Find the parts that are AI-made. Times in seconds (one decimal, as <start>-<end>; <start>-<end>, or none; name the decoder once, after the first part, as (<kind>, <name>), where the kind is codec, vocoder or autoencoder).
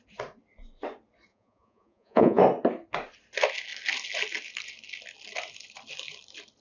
1.3-2.4 (vocoder, Vocos)